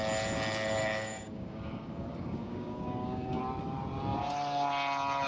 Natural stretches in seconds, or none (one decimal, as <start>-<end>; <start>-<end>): 0.0-0.8; 3.4-5.3